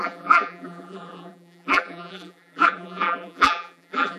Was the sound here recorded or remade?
remade